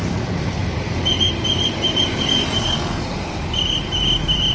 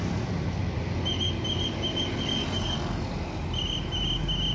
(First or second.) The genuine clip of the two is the second